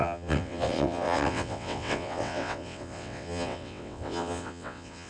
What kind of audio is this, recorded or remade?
remade